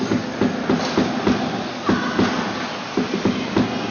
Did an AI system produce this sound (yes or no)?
no